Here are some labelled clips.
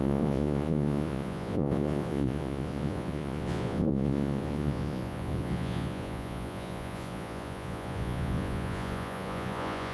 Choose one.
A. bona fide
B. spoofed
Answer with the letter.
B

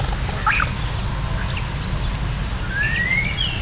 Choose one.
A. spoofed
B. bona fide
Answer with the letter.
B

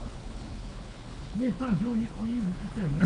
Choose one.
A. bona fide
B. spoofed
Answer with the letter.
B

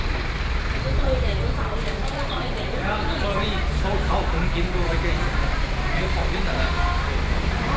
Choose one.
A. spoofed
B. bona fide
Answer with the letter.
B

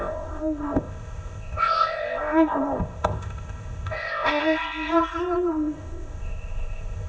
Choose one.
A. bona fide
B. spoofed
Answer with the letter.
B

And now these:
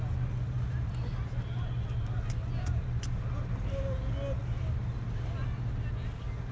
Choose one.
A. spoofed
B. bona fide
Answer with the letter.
B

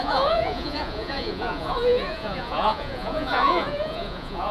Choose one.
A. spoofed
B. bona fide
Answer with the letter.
A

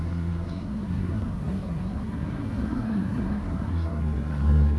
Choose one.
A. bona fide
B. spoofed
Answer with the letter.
B